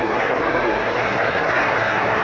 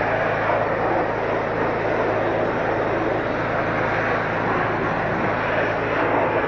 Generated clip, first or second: first